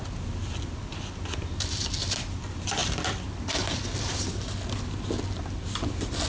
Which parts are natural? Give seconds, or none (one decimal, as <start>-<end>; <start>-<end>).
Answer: 0.0-6.3